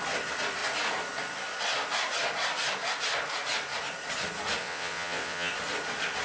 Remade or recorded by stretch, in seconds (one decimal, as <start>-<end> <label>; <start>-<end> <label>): 0.0-4.6 recorded; 4.6-5.5 remade; 5.5-6.2 recorded